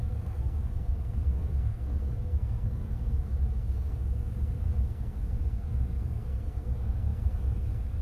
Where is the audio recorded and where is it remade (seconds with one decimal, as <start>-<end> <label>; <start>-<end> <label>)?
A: 0.0-8.0 remade